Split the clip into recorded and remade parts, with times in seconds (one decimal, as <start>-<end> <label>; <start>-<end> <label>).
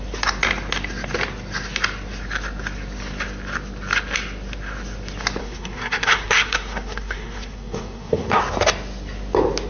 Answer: 0.0-5.4 recorded; 5.4-8.4 remade; 8.4-9.7 recorded